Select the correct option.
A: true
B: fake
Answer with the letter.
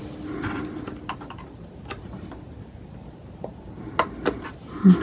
A